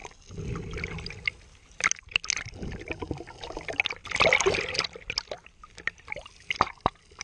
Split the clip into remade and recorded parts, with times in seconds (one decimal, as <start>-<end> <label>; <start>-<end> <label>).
0.0-7.2 recorded